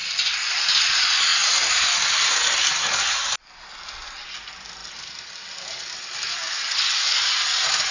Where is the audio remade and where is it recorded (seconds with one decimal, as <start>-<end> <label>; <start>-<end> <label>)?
0.0-7.9 recorded